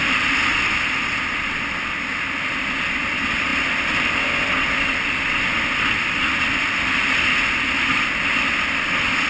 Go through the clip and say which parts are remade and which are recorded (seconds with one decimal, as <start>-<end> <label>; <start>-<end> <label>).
0.0-9.3 recorded